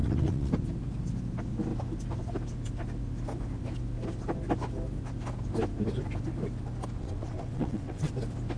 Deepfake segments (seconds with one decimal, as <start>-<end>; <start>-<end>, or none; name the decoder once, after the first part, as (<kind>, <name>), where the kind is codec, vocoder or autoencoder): 0.0-0.5 (vocoder, WaveNeXt); 7.0-8.1